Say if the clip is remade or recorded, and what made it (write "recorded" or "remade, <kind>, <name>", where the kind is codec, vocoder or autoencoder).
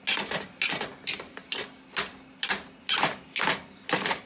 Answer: recorded